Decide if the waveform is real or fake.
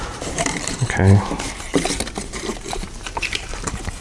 fake